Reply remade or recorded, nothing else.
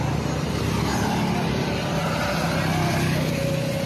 recorded